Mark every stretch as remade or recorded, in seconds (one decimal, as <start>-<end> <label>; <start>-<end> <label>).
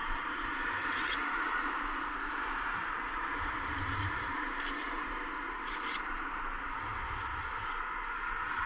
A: 0.0-6.9 remade; 6.9-8.7 recorded